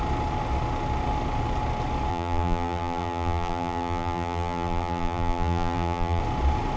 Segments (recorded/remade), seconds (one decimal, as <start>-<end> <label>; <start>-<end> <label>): 0.0-2.1 recorded; 2.1-6.2 remade; 6.2-6.8 recorded